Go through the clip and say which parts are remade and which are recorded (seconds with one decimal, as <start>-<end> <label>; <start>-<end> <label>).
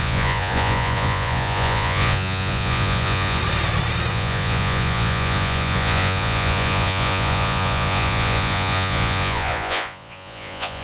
0.0-3.4 remade; 3.4-4.1 recorded; 4.1-10.8 remade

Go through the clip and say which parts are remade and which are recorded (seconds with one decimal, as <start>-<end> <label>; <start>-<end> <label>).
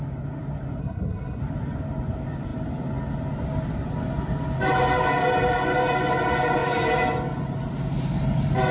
0.0-0.8 recorded; 0.8-1.4 remade; 1.4-8.7 recorded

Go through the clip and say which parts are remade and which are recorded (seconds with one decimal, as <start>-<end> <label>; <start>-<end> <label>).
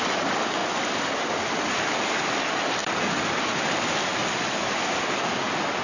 0.0-0.6 recorded; 0.6-2.4 remade; 2.4-2.8 recorded; 2.8-3.3 remade; 3.3-4.1 recorded; 4.1-5.8 remade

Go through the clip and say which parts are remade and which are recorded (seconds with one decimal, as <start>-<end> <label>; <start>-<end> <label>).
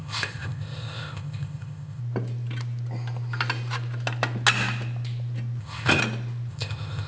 0.0-2.0 remade; 2.0-5.6 recorded; 5.6-6.0 remade; 6.0-6.5 recorded; 6.5-7.1 remade